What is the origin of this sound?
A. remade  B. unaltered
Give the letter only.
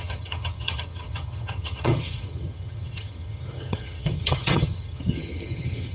A